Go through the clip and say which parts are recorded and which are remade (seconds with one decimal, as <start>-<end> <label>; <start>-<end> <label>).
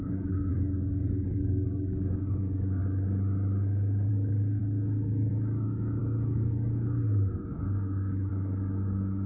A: 0.0-2.8 remade; 2.8-4.1 recorded; 4.1-9.3 remade